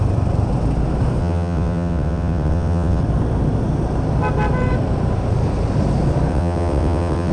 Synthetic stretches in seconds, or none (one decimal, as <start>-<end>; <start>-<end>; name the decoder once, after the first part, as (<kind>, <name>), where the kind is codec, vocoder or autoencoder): 1.2-3.0 (vocoder, WaveNeXt); 6.3-7.3